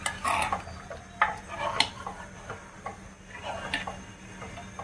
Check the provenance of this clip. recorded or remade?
recorded